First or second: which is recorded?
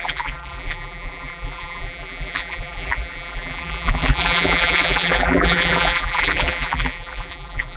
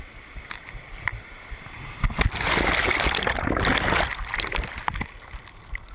second